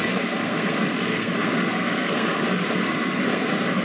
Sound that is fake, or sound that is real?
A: fake